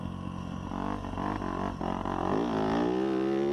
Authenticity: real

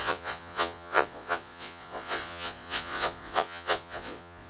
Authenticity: fake